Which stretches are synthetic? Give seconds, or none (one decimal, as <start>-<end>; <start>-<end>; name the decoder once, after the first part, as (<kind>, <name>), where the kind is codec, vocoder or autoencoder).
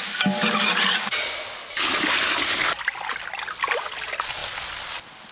none